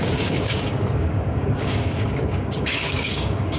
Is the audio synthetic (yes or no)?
yes